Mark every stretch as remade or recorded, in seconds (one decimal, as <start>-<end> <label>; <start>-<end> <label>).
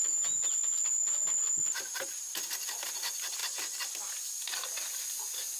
0.0-5.6 recorded